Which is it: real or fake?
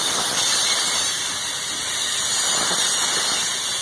real